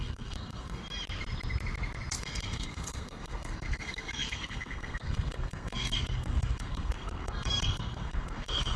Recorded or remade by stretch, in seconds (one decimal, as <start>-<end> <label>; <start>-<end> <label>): 0.0-0.8 remade; 0.8-2.2 recorded; 2.2-8.8 remade